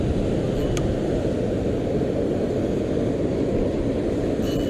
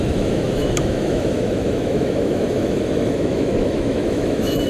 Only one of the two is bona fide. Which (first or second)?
first